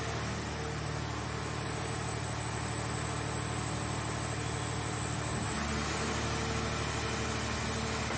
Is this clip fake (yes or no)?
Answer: no